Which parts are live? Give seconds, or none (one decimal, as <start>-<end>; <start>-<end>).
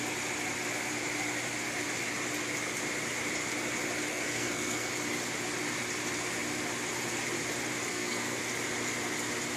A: 0.0-4.1; 4.9-7.9; 8.4-9.6